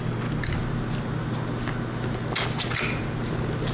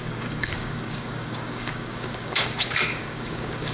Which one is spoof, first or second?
second